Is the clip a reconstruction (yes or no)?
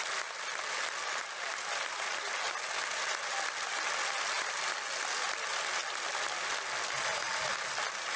no